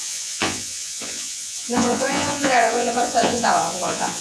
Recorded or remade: remade